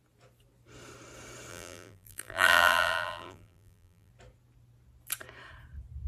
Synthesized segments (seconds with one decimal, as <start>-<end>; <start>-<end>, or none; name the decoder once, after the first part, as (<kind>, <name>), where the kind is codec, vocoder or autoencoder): 1.5-4.1 (vocoder, BigVGAN v2)